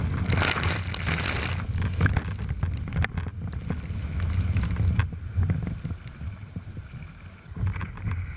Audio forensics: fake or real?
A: real